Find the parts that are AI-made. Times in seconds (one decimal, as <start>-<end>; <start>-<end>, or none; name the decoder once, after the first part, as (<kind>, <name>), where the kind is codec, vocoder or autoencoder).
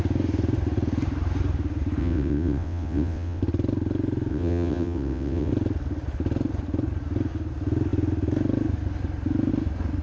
2.0-3.4 (vocoder, WaveNeXt); 4.3-5.5